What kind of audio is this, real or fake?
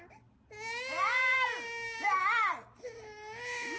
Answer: real